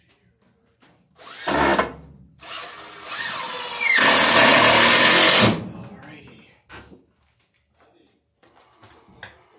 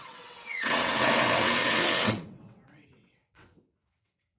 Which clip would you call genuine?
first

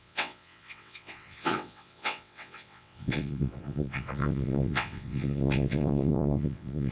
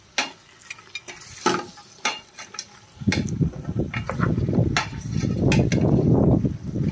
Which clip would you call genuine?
second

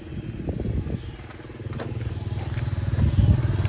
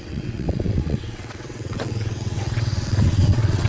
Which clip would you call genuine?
first